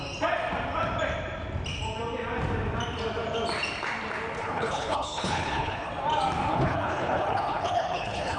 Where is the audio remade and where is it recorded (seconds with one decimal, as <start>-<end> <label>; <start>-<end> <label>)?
0.0-4.4 recorded; 4.4-5.9 remade; 5.9-6.5 recorded; 6.5-8.4 remade

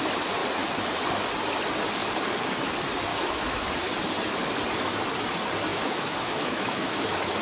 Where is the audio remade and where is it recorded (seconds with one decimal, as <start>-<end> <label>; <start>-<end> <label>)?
0.0-3.1 recorded; 3.1-3.7 remade; 3.7-5.7 recorded; 5.7-7.4 remade